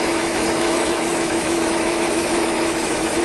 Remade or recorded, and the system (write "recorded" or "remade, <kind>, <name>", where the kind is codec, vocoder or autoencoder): remade, autoencoder, DAC-VAE